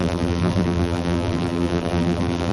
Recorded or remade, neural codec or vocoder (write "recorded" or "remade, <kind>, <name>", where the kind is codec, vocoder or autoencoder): remade, vocoder, BigVGAN v2